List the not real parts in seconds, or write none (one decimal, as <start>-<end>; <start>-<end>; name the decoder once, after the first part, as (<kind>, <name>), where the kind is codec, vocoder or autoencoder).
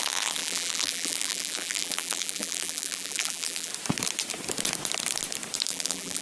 0.0-3.7 (vocoder, BigVGAN v2); 5.7-6.2